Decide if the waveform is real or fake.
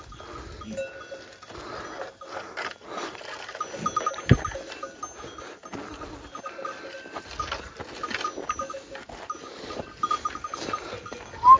real